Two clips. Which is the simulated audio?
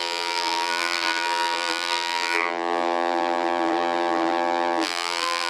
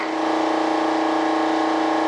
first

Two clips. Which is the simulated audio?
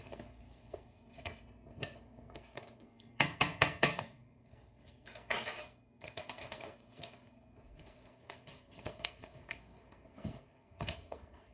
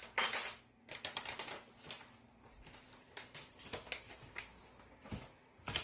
first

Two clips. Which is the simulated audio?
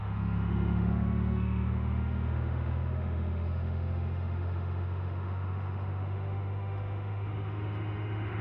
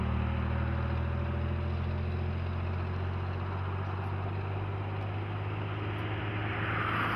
first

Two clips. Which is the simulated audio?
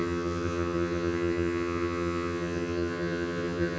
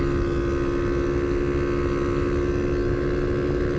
first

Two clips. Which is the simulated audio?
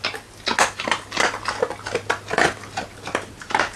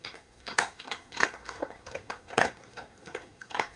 second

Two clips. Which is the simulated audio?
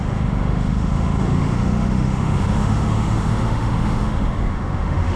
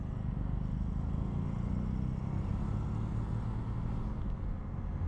first